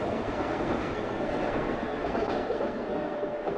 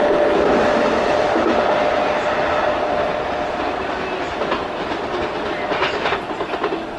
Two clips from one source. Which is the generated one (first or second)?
first